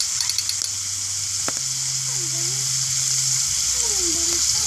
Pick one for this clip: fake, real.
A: real